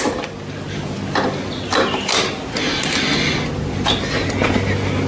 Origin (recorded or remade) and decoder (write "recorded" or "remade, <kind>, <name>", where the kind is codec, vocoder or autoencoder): recorded